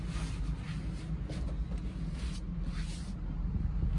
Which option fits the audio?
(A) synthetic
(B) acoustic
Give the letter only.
B